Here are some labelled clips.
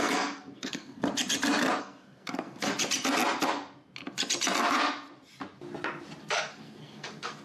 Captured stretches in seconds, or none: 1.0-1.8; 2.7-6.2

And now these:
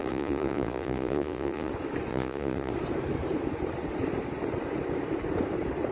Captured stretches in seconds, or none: 1.7-2.1; 2.7-5.9

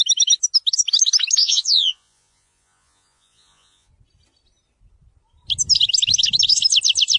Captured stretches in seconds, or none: 0.0-1.4; 3.9-7.2

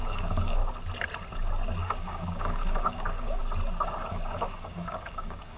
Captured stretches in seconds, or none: 0.6-1.8; 3.4-4.1

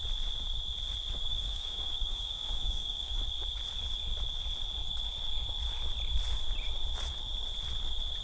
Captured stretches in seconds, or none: 0.0-1.3; 3.2-8.2

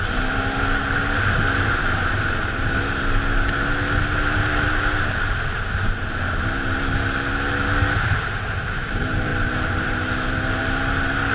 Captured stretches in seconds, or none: 0.0-11.3

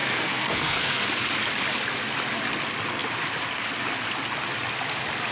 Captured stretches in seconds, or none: 1.1-5.3